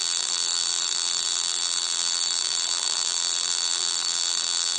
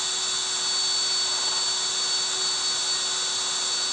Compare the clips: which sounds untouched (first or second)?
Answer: second